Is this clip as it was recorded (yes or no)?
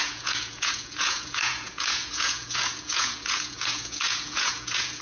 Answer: no